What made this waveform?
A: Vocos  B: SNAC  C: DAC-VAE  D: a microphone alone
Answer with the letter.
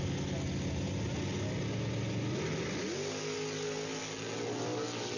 D